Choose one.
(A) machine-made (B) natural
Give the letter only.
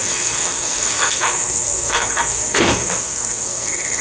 A